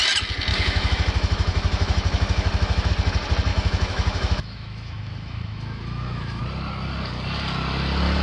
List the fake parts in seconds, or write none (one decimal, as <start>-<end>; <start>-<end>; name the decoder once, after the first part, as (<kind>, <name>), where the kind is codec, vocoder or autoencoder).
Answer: 0.5-2.9 (autoencoder, DAC-VAE); 3.5-6.4